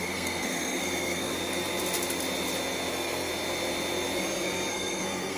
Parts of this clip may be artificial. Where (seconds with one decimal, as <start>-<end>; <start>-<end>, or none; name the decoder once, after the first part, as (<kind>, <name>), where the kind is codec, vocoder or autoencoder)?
0.0-1.3 (codec, SNAC); 2.9-3.3; 4.7-5.4